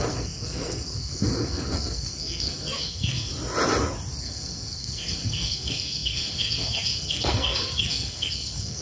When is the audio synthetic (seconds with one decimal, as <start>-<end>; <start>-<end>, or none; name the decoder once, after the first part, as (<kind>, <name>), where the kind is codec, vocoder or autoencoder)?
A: 0.0-3.3 (codec, SNAC); 4.2-8.8